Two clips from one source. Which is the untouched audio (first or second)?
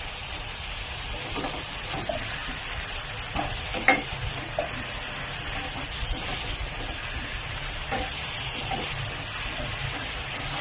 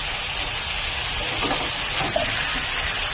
second